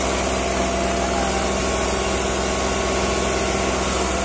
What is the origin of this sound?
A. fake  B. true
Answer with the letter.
B